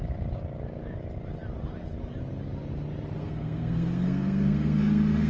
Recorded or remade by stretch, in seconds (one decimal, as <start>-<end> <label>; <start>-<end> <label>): 0.0-3.2 recorded; 3.2-5.3 remade